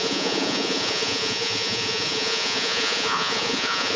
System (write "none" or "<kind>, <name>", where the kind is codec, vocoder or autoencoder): vocoder, Vocos